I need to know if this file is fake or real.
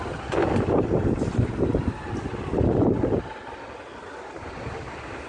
real